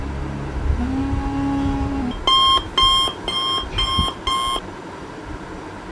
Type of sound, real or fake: real